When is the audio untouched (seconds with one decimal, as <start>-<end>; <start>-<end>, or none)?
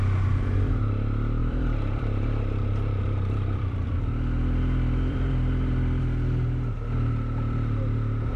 0.0-1.4; 6.0-8.4